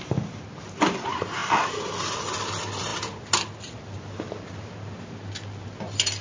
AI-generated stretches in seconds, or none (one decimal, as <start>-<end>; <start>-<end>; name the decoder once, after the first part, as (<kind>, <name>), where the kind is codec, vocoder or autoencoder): none